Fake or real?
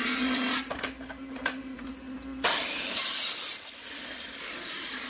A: real